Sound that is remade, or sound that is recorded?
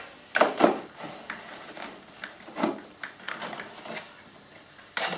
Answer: recorded